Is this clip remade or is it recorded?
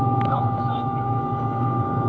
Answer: remade